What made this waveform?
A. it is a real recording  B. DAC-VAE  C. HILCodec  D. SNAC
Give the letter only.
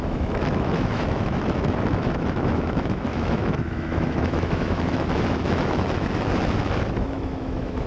B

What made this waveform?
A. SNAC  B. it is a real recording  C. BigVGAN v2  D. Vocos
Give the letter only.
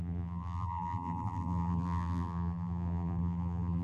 C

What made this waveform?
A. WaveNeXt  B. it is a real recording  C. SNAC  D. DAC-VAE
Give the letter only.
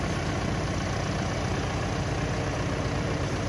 B